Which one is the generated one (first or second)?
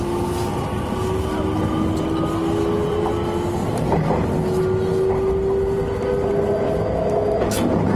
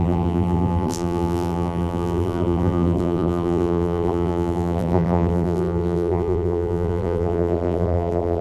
second